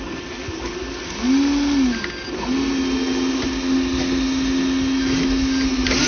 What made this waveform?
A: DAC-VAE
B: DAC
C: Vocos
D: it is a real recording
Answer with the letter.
D